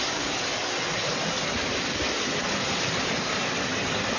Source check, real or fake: real